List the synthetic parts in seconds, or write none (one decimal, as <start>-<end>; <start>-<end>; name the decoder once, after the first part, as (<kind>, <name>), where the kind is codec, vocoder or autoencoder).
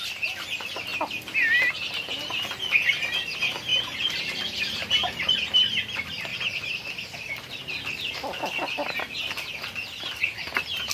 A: 6.3-6.8 (vocoder, BigVGAN v2)